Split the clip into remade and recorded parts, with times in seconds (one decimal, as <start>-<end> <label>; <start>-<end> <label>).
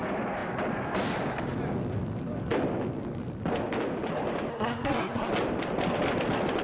0.0-4.5 recorded; 4.5-5.3 remade; 5.3-6.6 recorded